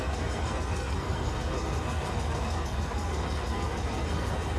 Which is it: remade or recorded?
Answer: remade